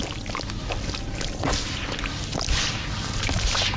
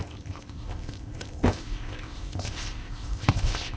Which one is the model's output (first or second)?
second